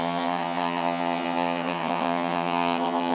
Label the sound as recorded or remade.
remade